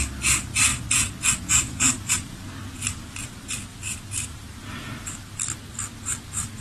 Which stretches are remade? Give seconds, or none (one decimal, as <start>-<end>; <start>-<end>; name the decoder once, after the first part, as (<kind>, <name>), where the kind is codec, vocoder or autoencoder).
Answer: 3.7-4.4 (vocoder, BigVGAN v2)

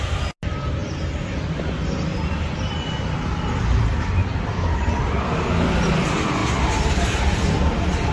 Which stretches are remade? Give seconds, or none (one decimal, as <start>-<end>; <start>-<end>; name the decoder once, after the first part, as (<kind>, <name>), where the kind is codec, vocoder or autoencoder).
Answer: 4.2-5.0 (vocoder, BigVGAN v2)